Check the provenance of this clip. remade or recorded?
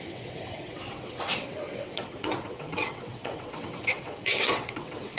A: remade